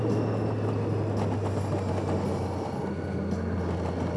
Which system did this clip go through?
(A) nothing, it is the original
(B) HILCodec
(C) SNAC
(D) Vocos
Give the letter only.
A